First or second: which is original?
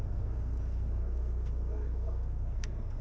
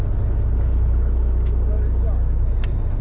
second